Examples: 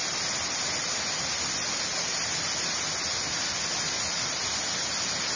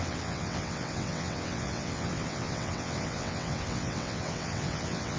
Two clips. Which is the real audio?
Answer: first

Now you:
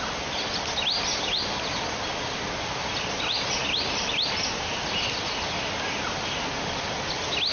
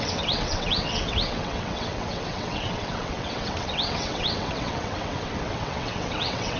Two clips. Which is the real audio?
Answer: first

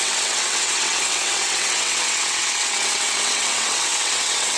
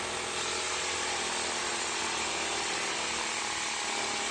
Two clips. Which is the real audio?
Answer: second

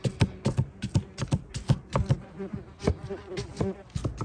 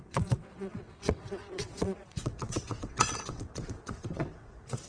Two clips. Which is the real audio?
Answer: first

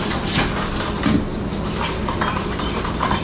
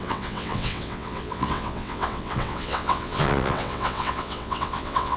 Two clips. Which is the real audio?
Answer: first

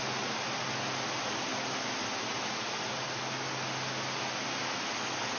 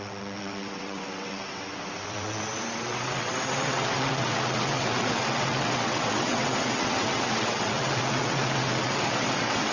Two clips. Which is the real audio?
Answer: first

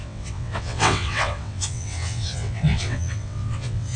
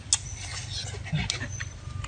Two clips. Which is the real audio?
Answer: second